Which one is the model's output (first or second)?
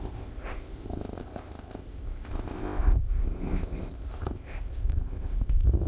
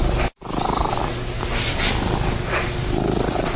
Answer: first